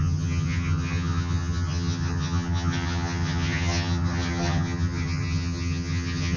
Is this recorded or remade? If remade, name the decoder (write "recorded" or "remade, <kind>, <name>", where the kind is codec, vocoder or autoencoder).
remade, vocoder, HiFi-GAN